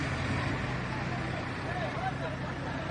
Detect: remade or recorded recorded